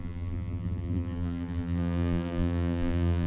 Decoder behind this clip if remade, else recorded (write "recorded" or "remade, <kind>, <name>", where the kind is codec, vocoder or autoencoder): remade, vocoder, BigVGAN v2